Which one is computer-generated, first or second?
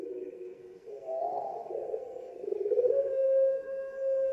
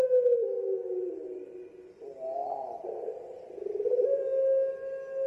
first